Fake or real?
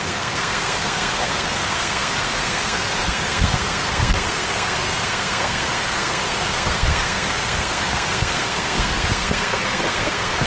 fake